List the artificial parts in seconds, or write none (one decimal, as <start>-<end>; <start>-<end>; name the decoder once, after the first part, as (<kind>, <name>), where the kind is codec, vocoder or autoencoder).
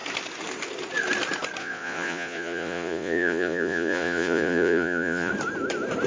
1.6-5.3 (vocoder, Vocos)